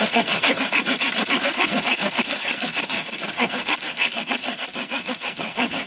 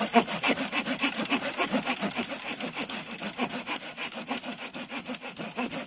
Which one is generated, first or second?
first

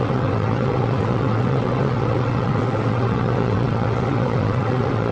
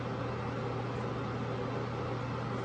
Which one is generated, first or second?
first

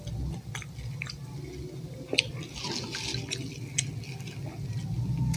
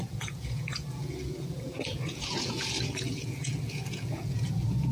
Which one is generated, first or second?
second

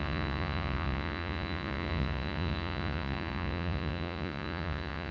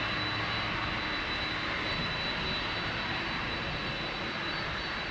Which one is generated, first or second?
first